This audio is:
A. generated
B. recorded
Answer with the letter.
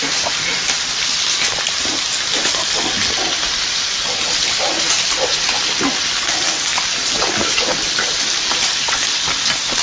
B